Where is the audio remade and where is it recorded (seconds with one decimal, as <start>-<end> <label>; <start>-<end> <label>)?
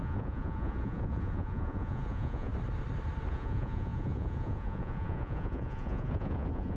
0.0-2.5 remade; 2.5-3.3 recorded; 3.3-6.8 remade